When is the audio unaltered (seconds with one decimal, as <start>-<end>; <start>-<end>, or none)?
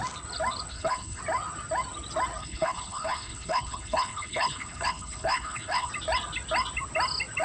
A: 0.0-0.7; 1.2-2.4; 5.9-7.4